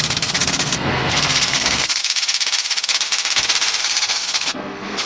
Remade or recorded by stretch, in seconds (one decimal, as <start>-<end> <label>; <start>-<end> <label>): 0.0-2.0 remade; 2.0-3.8 recorded; 3.8-5.1 remade